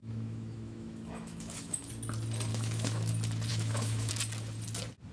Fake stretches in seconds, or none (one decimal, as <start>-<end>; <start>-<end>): 0.0-1.9; 2.5-3.1; 3.5-4.1